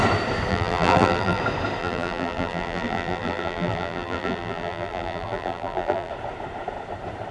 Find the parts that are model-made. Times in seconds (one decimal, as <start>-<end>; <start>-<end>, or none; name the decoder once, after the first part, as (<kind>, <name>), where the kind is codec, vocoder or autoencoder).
0.5-1.4 (vocoder, BigVGAN v2); 1.8-6.1